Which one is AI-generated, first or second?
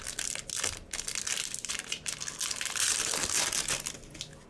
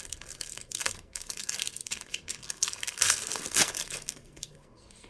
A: second